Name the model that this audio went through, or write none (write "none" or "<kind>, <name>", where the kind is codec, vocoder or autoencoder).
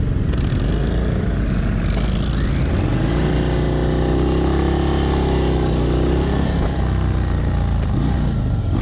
none